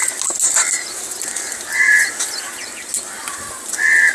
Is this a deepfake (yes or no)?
no